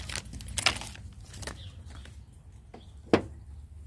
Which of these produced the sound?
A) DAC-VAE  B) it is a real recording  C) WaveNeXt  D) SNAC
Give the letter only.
B